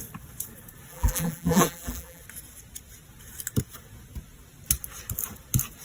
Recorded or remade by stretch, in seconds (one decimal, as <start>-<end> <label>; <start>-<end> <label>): 0.0-0.9 recorded; 0.9-2.2 remade; 2.2-5.8 recorded